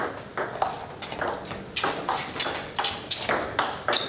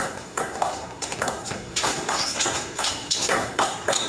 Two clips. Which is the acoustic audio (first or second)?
first